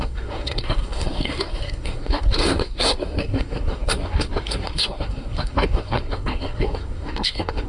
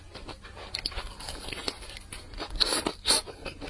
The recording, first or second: second